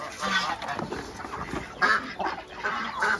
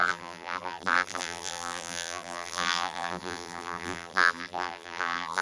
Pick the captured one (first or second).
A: first